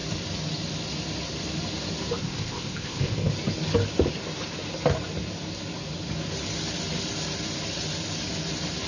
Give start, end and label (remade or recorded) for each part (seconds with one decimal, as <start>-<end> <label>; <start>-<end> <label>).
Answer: 0.0-2.2 recorded; 2.2-3.3 remade; 3.3-8.9 recorded